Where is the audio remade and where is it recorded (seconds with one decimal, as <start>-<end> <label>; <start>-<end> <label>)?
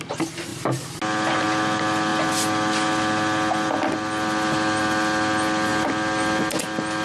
0.0-7.0 recorded